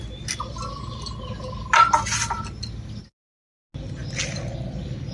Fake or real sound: real